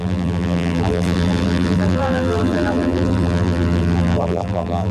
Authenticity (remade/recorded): remade